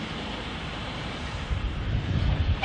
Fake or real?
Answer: fake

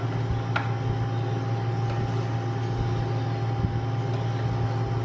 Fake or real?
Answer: real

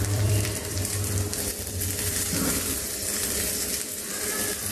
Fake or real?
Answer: fake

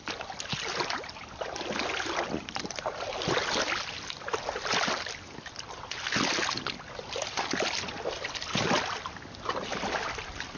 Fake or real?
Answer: real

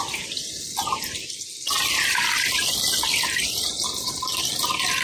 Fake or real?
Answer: fake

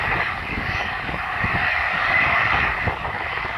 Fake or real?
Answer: fake